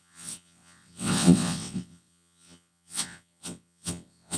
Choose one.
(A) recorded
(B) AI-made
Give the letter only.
B